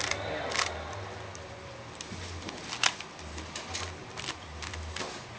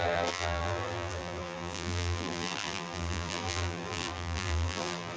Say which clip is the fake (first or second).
second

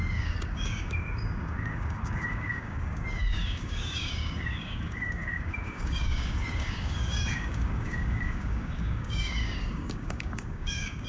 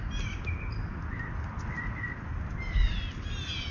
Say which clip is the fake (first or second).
first